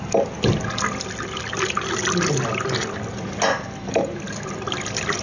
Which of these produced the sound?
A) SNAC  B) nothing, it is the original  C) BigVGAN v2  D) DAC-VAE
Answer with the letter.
B